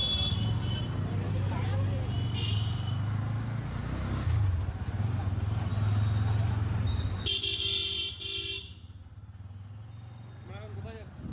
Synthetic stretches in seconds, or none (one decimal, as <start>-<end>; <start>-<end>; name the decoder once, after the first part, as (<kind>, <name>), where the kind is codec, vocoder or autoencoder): none